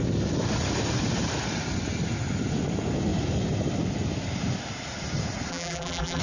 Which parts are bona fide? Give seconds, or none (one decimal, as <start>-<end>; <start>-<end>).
0.0-5.5